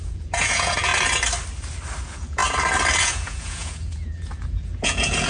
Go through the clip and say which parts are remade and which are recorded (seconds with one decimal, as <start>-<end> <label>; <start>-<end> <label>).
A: 0.0-0.9 remade; 0.9-2.0 recorded; 2.0-2.4 remade; 2.4-3.0 recorded; 3.0-5.3 remade